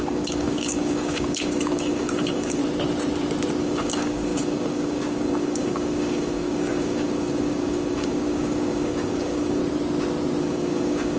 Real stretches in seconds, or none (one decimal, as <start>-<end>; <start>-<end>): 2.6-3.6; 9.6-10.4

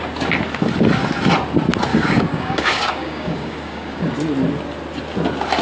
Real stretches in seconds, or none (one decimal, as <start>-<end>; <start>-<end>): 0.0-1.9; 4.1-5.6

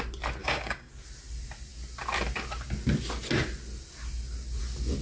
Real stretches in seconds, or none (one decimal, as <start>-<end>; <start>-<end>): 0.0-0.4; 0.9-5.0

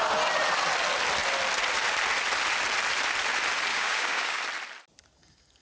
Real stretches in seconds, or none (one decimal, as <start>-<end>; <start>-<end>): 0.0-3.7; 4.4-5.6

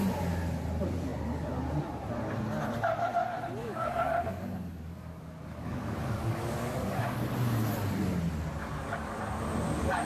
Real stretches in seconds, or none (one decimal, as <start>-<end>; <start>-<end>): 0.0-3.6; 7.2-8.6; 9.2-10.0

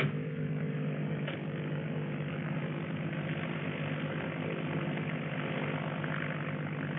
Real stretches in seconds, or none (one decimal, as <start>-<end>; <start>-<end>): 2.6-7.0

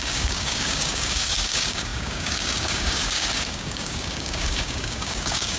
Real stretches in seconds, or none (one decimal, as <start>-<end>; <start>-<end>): none

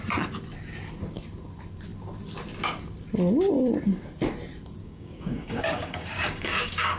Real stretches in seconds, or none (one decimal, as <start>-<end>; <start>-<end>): 0.0-4.8